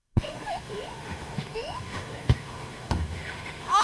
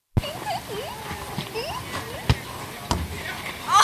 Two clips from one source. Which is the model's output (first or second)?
first